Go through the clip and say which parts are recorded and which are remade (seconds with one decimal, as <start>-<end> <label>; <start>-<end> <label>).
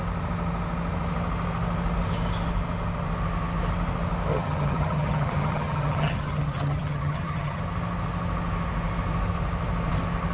0.0-4.3 recorded; 4.3-7.6 remade; 7.6-10.3 recorded